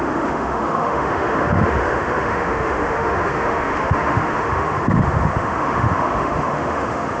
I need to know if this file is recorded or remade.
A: remade